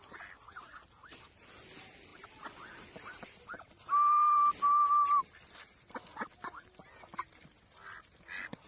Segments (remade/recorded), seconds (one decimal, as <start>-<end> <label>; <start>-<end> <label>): 0.0-2.1 recorded; 2.1-4.5 remade; 4.5-8.7 recorded